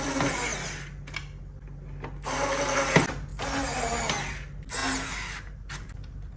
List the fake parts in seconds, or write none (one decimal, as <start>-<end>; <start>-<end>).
none